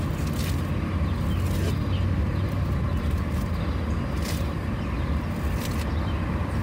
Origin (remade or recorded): recorded